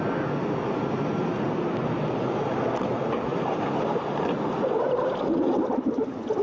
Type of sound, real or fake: real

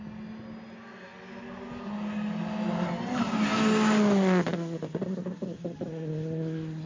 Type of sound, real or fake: real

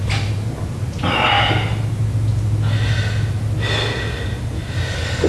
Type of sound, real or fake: real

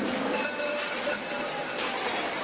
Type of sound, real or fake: real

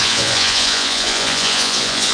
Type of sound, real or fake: fake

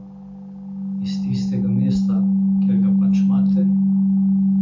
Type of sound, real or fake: real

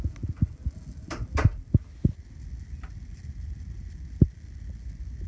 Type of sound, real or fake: real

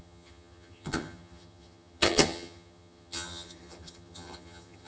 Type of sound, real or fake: fake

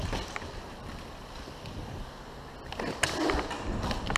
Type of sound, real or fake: real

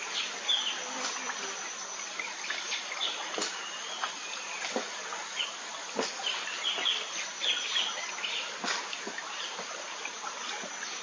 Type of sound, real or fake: real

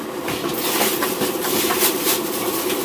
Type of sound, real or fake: real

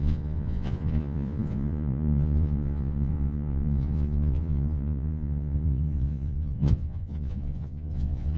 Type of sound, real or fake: fake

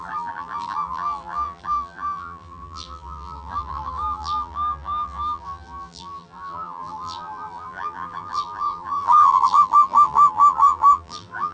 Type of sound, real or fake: fake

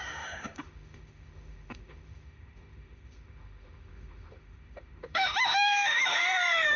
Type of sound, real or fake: fake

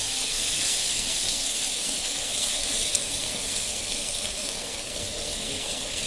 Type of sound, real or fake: fake